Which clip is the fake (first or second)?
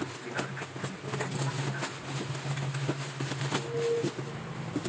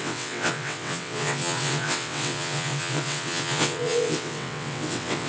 second